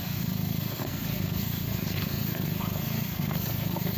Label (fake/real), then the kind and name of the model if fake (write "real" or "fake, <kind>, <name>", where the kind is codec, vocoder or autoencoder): fake, codec, SNAC